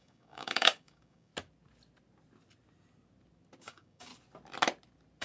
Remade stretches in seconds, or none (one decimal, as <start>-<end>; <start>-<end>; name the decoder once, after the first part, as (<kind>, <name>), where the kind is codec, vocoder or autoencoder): 0.0-1.3 (codec, DAC); 3.6-4.1